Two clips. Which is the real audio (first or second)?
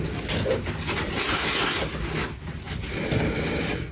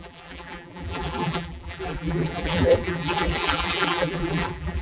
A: first